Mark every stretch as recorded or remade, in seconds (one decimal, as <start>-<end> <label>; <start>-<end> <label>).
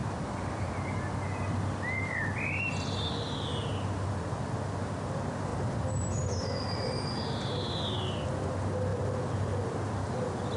0.0-10.6 recorded